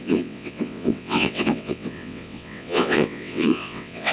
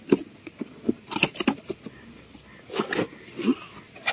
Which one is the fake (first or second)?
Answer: first